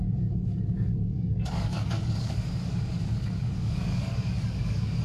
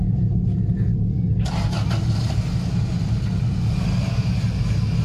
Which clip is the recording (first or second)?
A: second